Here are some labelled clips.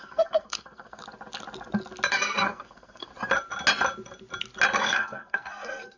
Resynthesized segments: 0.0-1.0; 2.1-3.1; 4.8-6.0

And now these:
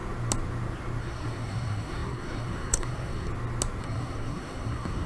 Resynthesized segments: 1.0-3.3; 3.8-5.1

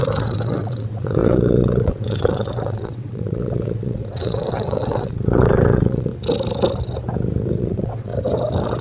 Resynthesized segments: 0.0-6.1; 7.6-8.1

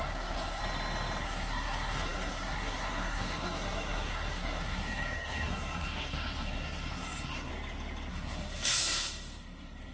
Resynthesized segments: 0.0-0.6; 1.2-7.5; 8.1-9.9

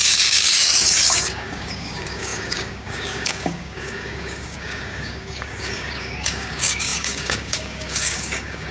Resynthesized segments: 0.0-8.7

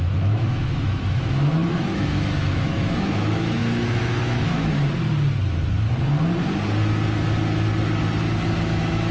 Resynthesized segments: 0.0-4.7; 8.6-9.1